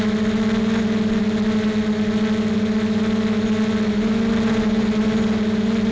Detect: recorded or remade recorded